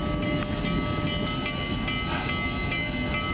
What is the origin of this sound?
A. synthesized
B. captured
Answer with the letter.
B